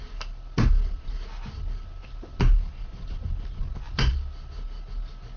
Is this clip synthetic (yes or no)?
no